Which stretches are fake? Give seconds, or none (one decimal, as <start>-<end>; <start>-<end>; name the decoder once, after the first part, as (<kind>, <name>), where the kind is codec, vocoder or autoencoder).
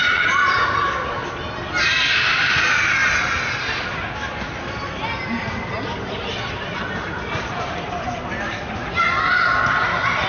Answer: 0.0-0.8 (vocoder, Vocos)